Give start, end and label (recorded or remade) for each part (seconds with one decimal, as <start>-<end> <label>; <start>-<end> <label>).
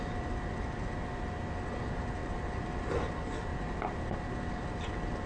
0.0-3.5 recorded; 3.5-4.0 remade; 4.0-5.3 recorded